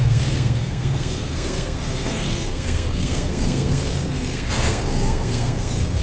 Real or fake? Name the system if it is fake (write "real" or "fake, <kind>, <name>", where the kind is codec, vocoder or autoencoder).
fake, codec, SNAC